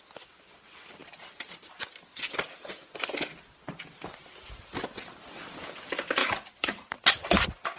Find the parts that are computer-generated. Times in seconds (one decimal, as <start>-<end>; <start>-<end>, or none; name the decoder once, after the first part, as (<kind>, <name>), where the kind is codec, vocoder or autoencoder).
6.2-7.0 (vocoder, BigVGAN v2)